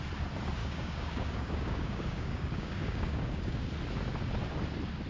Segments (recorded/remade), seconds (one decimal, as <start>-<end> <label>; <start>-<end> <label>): 0.0-0.6 recorded; 0.6-3.7 remade; 3.7-5.1 recorded

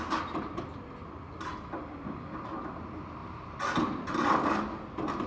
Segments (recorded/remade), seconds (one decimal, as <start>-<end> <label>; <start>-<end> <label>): 0.0-5.3 recorded

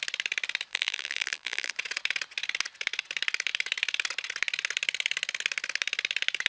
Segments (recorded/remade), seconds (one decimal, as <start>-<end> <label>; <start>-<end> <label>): 0.0-0.7 recorded; 0.7-1.7 remade; 1.7-6.5 recorded